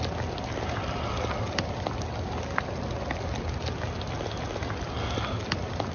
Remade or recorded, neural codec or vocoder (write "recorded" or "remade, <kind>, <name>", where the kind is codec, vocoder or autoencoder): recorded